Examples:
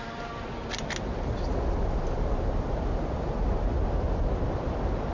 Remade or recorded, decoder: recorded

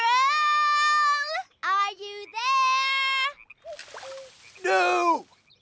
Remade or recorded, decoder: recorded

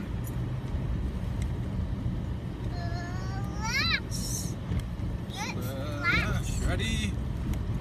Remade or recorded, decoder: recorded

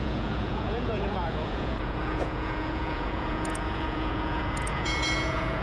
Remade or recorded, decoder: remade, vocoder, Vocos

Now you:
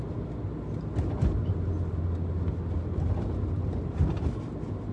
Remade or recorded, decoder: recorded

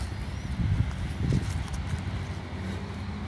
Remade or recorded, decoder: recorded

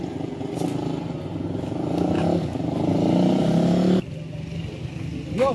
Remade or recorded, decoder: recorded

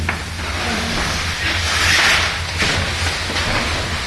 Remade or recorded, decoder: recorded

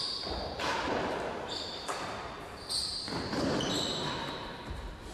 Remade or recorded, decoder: remade, vocoder, BigVGAN v2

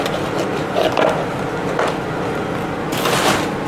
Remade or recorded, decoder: recorded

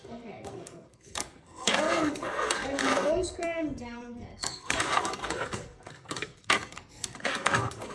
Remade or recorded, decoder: remade, codec, SNAC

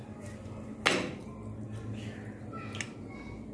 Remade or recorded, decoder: recorded